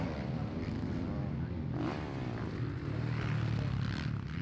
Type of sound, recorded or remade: recorded